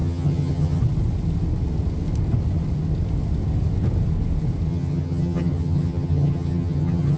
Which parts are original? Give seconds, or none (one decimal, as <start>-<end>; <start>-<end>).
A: 0.8-4.7